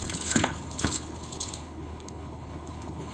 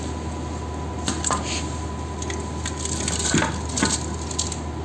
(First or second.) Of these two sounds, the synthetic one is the first